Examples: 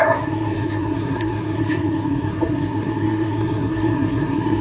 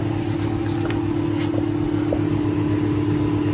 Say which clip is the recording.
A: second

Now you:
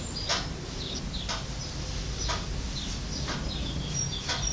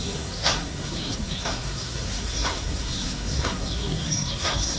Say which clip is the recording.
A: first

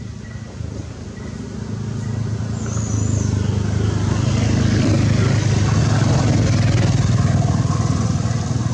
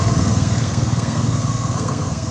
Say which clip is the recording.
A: first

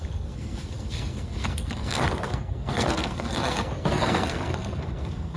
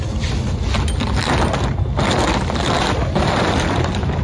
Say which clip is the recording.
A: second